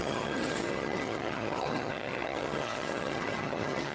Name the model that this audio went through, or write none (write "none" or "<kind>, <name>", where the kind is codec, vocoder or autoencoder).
vocoder, HiFi-GAN